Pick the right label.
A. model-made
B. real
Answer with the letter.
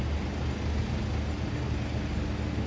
B